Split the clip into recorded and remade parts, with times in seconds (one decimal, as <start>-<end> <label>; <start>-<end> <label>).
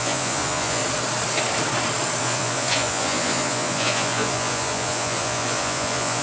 0.0-0.8 remade; 0.8-2.2 recorded; 2.2-6.2 remade